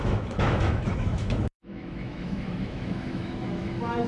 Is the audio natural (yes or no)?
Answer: no